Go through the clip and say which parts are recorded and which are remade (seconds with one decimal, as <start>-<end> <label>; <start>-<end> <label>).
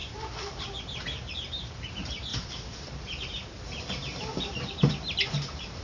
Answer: 0.0-5.8 remade